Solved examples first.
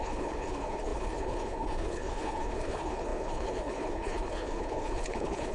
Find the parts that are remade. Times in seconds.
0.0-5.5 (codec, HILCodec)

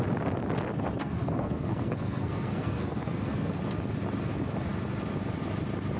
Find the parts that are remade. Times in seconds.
1.0-3.5 (codec, SNAC)

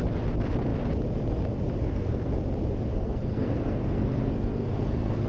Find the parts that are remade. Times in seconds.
1.8-2.3 (codec, SNAC); 2.9-5.3

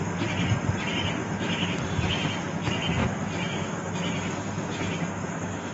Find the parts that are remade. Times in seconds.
1.2-1.8 (autoencoder, DAC-VAE); 3.0-3.9

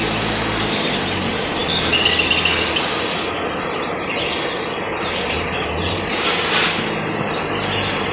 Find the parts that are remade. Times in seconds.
none